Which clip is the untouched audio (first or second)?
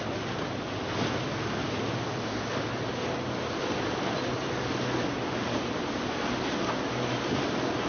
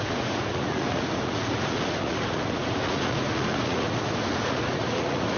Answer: first